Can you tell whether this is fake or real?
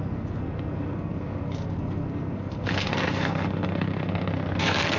fake